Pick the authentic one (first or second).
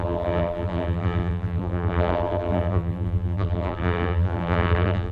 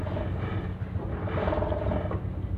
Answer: second